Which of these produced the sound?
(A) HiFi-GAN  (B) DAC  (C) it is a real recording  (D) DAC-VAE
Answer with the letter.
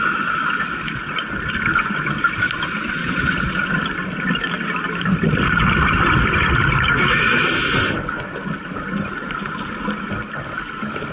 C